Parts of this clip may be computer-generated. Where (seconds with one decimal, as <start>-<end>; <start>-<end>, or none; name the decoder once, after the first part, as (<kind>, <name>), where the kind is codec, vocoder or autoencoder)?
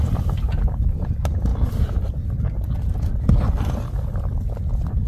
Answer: none